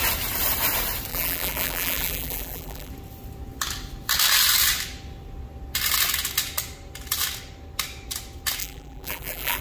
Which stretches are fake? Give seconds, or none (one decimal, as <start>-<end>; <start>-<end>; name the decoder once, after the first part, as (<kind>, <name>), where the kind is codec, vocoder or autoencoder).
1.1-2.9 (vocoder, BigVGAN v2); 8.6-9.6